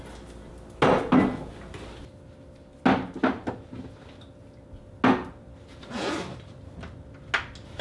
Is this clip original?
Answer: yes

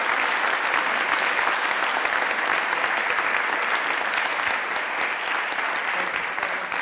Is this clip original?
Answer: yes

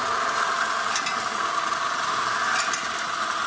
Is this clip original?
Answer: yes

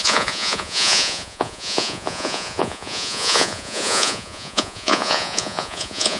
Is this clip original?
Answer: no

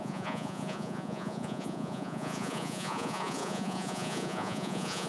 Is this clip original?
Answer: no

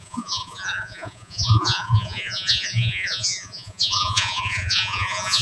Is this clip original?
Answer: no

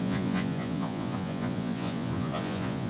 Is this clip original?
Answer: no